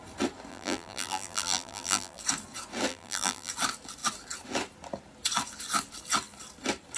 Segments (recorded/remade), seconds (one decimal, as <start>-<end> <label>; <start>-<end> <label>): 0.0-0.5 recorded; 0.5-2.2 remade; 2.2-2.9 recorded; 2.9-3.5 remade; 3.5-7.0 recorded